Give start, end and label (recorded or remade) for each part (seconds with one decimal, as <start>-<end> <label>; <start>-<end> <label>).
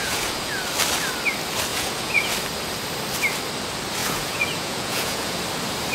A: 0.0-0.6 remade; 0.6-1.7 recorded; 1.7-2.3 remade; 2.3-4.0 recorded; 4.0-5.4 remade; 5.4-5.9 recorded